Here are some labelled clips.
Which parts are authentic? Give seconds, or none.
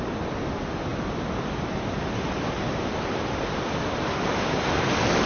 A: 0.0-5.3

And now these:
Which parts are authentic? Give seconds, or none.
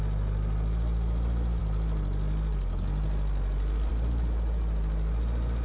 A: 0.0-5.6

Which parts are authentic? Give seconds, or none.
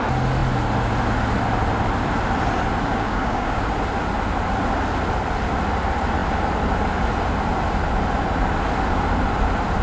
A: 0.0-2.9; 3.6-9.8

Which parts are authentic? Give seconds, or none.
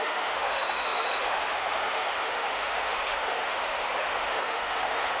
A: none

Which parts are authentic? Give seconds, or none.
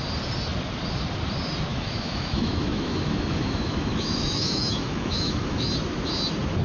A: 0.0-1.7; 5.7-6.6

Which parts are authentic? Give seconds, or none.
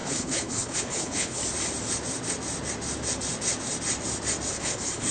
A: 1.4-4.5